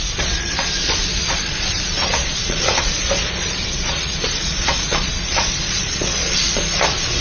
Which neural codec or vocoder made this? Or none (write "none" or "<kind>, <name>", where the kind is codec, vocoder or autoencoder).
vocoder, Vocos